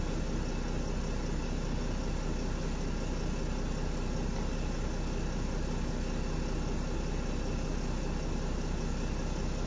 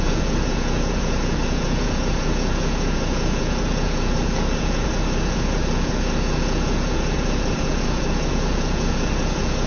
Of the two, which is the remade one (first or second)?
second